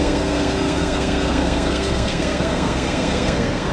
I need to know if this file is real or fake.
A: fake